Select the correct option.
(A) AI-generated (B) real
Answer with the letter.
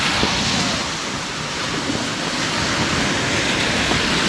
B